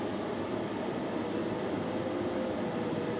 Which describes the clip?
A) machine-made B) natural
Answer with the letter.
B